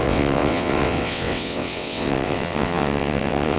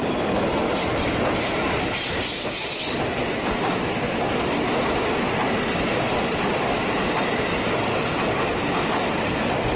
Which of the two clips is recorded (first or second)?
second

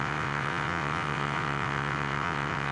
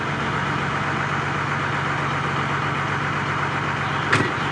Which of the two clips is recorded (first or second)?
second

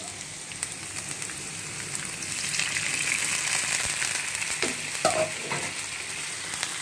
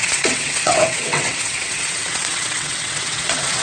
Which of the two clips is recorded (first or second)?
first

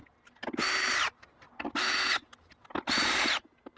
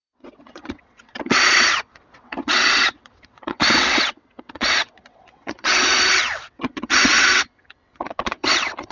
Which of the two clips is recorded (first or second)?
first